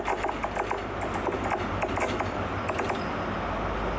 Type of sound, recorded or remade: recorded